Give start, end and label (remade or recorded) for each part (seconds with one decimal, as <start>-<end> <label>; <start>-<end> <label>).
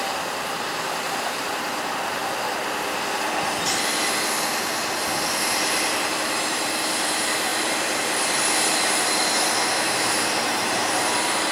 0.0-2.2 remade; 2.2-6.0 recorded; 6.0-11.5 remade